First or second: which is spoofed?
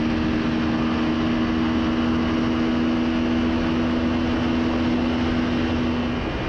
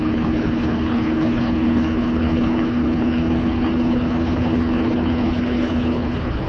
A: second